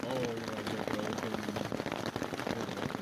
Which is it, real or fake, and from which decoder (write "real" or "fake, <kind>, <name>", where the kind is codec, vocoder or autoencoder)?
real